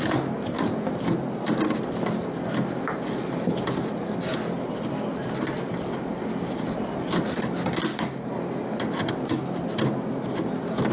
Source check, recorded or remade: recorded